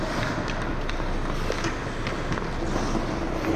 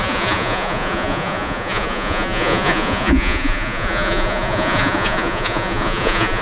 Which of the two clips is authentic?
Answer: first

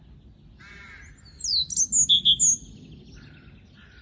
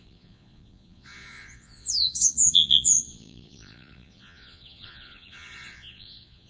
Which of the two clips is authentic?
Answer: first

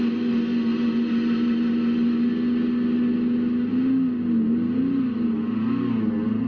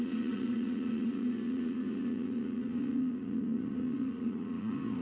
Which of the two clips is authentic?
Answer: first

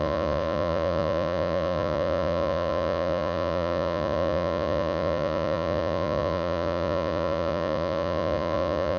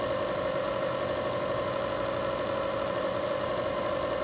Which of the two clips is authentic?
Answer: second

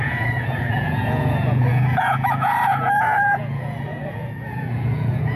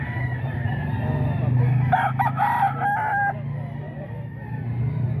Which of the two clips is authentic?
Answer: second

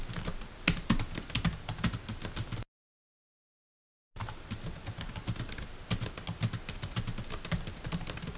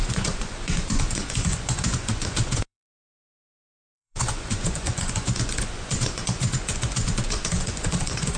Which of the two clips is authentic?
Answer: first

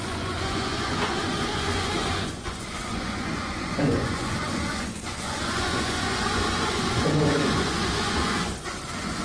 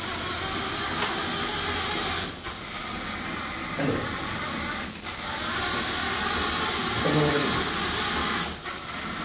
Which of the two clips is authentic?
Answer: second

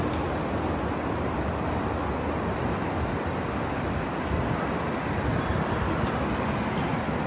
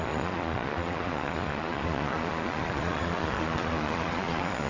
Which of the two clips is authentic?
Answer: first